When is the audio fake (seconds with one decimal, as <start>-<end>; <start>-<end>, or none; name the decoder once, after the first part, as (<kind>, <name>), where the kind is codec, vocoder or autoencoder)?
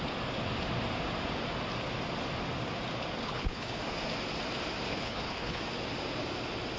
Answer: 3.2-3.8 (codec, HILCodec); 4.9-5.6